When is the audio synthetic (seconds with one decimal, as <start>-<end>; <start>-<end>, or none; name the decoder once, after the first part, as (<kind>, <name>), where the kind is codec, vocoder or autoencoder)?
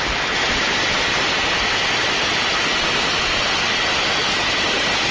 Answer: none